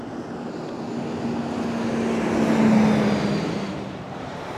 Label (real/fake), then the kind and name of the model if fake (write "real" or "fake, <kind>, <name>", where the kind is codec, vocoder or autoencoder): real